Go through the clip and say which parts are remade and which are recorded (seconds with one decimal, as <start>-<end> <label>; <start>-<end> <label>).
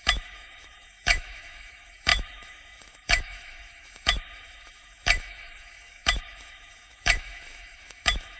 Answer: 0.0-8.4 remade